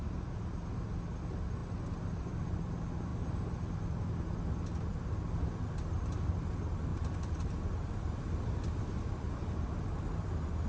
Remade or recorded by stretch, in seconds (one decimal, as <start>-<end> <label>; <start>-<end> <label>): 0.0-6.9 recorded; 6.9-8.6 remade; 8.6-10.7 recorded